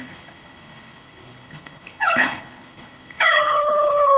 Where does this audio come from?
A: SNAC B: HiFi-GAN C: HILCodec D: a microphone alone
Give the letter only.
C